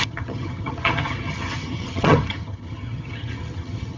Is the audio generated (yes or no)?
yes